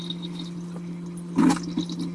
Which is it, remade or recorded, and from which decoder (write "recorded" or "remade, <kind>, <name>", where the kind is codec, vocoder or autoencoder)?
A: recorded